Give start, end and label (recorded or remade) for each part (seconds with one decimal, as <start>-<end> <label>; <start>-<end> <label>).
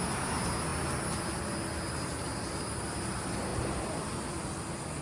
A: 0.0-5.0 recorded